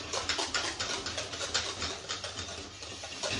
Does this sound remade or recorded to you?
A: recorded